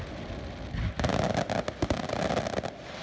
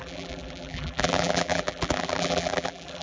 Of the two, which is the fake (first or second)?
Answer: second